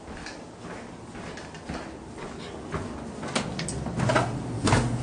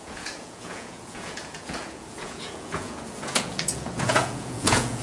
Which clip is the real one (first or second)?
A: first